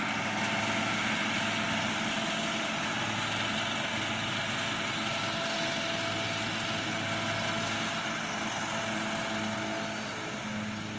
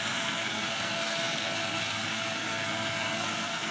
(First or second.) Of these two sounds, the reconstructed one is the second